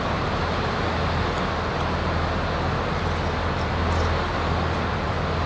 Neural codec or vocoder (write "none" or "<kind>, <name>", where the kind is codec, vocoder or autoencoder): none